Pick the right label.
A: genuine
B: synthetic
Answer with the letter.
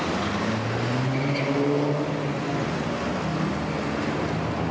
A